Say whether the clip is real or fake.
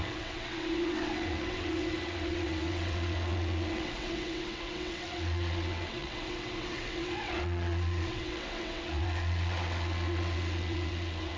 fake